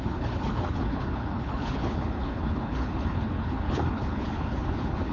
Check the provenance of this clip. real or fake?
fake